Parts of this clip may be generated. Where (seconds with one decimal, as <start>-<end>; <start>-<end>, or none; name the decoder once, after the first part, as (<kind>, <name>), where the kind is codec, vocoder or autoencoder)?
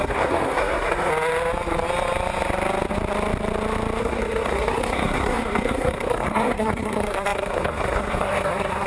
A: 0.0-1.1 (codec, SNAC); 4.0-8.9